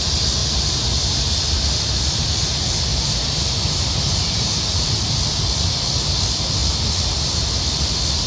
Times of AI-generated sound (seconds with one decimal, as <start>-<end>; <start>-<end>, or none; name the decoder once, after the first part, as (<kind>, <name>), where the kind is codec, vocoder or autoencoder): 0.4-1.3 (vocoder, BigVGAN v2); 2.9-4.8